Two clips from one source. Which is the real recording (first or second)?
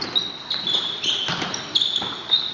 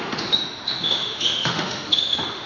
first